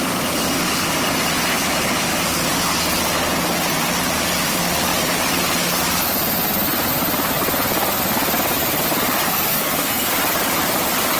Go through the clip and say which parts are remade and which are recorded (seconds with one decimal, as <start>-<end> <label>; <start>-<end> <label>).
0.0-9.2 recorded; 9.2-10.1 remade; 10.1-11.2 recorded